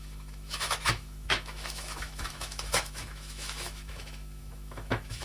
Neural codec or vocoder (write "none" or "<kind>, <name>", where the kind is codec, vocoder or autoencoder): autoencoder, DAC-VAE